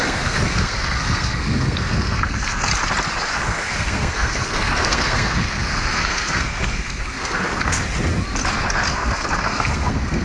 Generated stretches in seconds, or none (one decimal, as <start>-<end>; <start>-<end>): 0.0-2.7; 3.3-7.8; 8.9-10.2